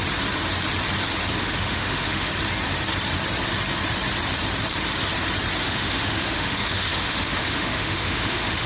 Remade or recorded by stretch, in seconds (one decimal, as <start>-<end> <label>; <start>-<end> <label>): 0.0-1.4 recorded; 1.4-2.3 remade; 2.3-5.6 recorded; 5.6-8.7 remade